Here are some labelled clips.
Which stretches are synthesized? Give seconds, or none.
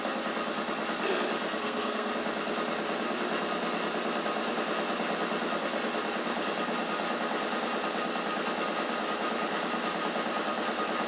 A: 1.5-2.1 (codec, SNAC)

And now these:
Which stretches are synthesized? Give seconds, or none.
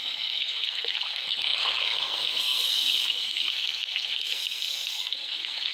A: 0.0-5.7 (codec, SNAC)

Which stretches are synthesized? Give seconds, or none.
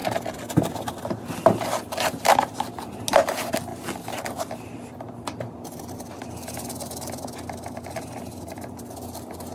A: none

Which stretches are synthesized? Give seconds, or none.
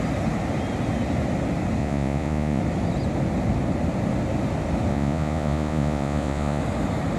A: 1.8-2.6 (vocoder, Vocos); 4.9-6.6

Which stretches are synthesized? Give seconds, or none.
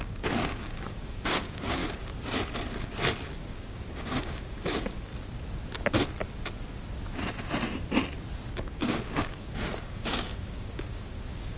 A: 0.0-1.8 (codec, DAC); 3.4-5.1; 8.6-11.6